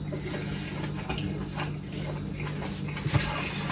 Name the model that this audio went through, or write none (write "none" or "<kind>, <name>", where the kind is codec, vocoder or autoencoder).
none